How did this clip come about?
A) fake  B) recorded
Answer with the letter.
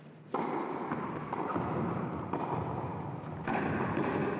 B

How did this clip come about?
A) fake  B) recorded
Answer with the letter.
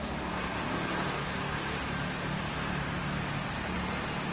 B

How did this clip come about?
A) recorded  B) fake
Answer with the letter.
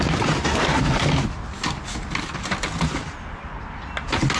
A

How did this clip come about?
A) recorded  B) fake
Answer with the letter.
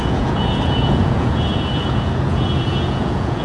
B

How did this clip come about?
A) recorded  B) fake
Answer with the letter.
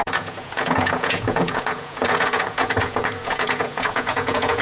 B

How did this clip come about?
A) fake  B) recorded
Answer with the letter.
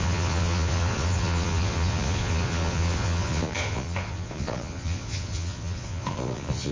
A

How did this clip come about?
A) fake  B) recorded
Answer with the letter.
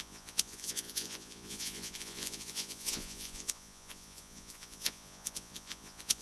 A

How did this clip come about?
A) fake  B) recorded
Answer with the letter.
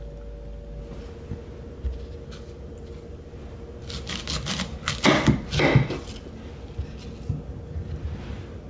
B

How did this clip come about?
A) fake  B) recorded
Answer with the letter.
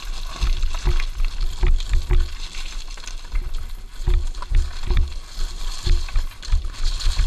B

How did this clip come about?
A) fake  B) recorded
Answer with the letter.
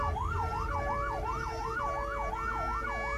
B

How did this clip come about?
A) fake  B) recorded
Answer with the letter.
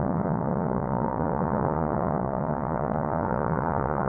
A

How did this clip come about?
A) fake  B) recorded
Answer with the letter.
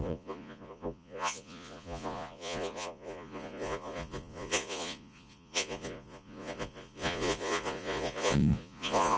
A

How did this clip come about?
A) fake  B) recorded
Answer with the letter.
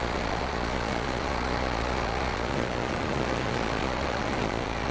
A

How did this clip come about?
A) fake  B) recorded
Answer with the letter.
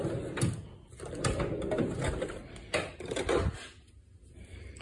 B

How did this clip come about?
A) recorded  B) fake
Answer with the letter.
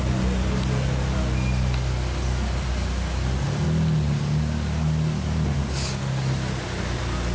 A